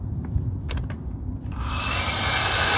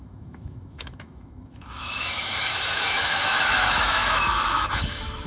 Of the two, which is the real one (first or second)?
first